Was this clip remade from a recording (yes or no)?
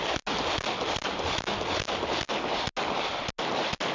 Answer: no